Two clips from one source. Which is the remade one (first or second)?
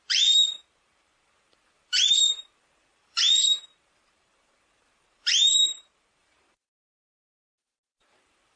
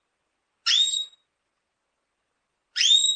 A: first